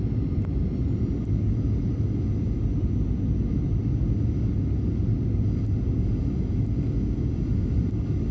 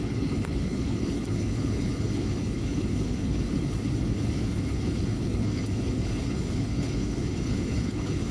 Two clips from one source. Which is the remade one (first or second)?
second